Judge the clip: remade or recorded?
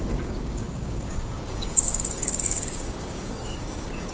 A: remade